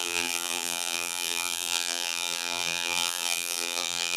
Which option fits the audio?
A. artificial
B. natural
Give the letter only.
A